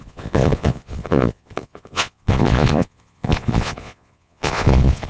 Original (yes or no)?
no